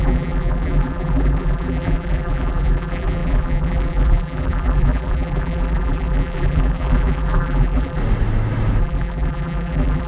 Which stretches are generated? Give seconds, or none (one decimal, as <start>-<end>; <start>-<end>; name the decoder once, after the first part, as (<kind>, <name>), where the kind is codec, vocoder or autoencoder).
0.0-8.0 (vocoder, BigVGAN v2); 8.8-10.1